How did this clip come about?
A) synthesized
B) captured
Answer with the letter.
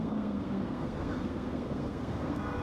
A